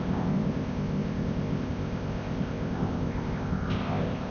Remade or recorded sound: remade